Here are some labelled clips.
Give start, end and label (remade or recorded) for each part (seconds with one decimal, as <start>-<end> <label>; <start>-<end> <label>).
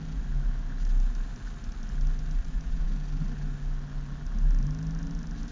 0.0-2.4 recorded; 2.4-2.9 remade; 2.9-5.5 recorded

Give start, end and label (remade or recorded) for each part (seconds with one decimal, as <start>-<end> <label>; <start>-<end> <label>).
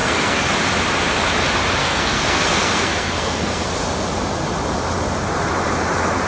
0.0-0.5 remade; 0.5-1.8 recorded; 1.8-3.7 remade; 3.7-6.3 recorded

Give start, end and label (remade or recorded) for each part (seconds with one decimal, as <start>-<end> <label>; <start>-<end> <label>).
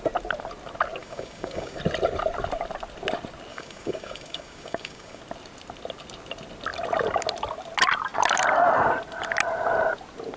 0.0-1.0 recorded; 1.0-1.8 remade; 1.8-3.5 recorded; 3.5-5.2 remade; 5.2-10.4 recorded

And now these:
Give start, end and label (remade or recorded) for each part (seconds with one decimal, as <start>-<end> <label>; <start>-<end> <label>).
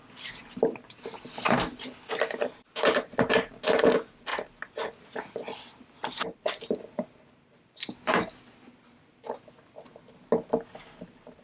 0.0-11.4 recorded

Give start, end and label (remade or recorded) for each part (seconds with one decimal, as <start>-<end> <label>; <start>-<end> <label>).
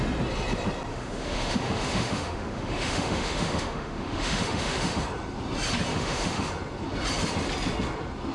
0.0-0.9 recorded; 0.9-5.0 remade; 5.0-5.9 recorded; 5.9-6.5 remade; 6.5-8.3 recorded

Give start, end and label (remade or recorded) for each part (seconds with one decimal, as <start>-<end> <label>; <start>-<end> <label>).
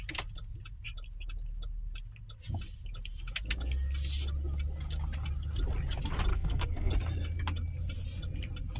0.0-6.3 recorded; 6.3-6.9 remade; 6.9-8.8 recorded